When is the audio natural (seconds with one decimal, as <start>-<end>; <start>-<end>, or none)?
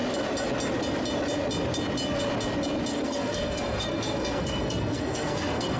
0.0-2.9